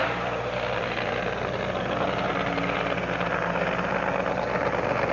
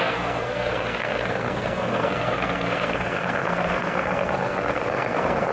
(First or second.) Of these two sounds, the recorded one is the first